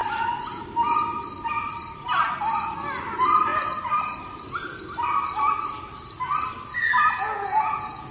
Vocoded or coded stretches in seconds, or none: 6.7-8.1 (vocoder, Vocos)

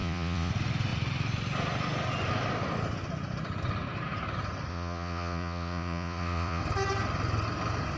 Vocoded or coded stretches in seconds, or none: 0.0-0.5 (vocoder, Vocos); 4.7-6.6

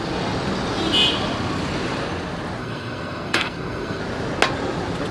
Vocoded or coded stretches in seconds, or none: 2.6-4.0 (codec, SNAC)

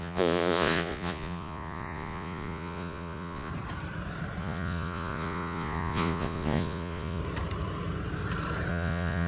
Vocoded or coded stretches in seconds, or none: 0.0-3.5 (vocoder, Vocos); 4.4-7.2; 8.7-9.3

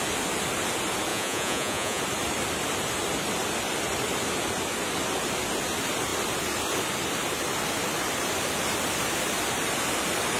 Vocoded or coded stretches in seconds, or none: 1.1-2.0 (vocoder, Vocos)

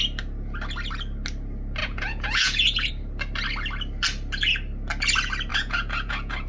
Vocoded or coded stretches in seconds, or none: 1.8-2.9 (vocoder, Vocos); 5.5-6.5

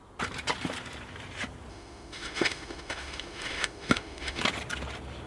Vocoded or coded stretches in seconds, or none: 1.7-4.4 (autoencoder, DAC-VAE)

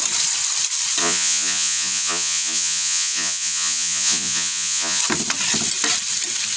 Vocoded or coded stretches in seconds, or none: 1.0-5.0 (vocoder, Vocos)